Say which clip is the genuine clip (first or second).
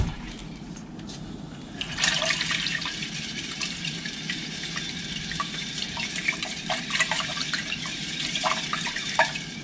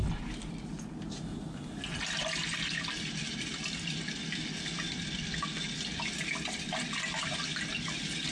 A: second